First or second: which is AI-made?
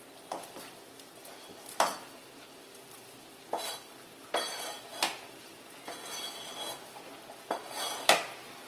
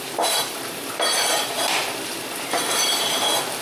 second